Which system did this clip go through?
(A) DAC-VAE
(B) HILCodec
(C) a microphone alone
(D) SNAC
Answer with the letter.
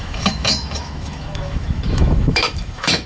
A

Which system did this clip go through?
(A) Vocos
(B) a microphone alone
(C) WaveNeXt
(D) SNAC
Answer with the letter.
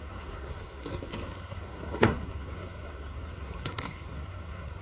D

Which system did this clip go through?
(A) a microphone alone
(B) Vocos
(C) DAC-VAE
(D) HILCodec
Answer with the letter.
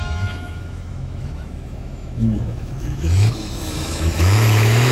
C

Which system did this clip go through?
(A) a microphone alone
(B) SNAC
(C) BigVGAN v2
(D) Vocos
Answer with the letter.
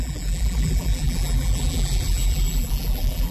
C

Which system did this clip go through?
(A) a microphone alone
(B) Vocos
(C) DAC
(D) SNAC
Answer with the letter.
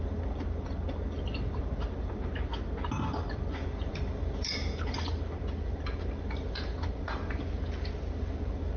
A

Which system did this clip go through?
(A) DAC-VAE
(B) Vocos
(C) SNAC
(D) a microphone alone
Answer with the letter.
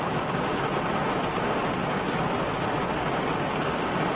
D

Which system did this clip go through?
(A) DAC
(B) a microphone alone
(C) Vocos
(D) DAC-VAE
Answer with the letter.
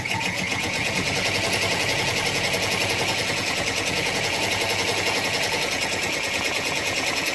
C